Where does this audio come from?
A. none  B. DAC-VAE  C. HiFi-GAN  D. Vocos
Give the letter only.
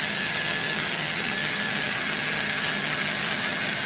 C